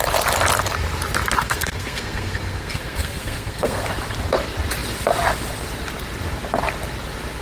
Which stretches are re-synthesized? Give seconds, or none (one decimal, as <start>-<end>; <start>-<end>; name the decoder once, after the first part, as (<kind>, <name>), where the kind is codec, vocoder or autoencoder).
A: 1.4-3.9 (codec, SNAC)